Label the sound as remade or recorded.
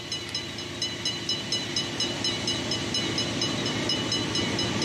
recorded